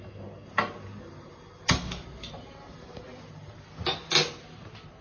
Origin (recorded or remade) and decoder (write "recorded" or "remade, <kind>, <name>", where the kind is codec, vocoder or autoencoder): recorded